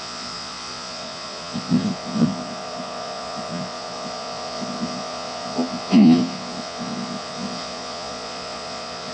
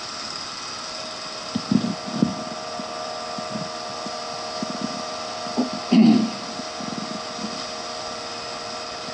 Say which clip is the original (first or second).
second